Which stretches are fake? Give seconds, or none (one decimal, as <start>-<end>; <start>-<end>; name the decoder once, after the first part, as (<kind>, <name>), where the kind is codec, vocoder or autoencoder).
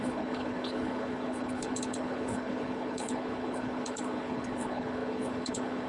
0.0-5.9 (codec, HILCodec)